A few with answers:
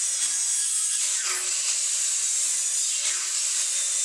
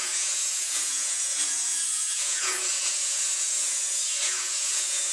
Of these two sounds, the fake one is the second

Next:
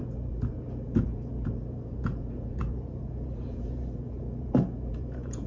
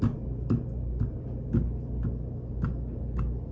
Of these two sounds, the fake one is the first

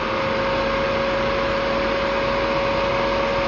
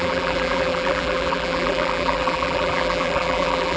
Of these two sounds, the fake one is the second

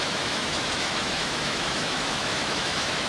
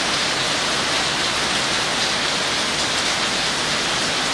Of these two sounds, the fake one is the first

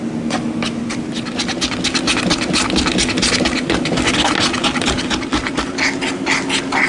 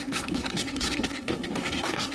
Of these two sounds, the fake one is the second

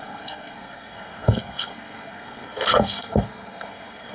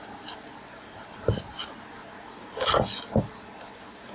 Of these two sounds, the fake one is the first